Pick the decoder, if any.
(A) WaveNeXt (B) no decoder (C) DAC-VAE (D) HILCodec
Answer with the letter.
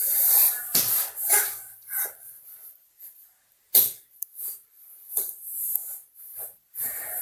B